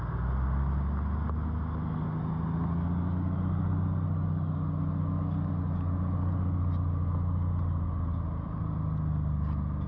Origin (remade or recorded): recorded